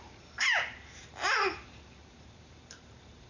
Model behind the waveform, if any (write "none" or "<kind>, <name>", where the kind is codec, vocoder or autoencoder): vocoder, BigVGAN v2